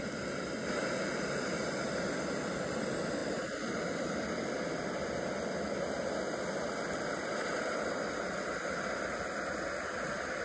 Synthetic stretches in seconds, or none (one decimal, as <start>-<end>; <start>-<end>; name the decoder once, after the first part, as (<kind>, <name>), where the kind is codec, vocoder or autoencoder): none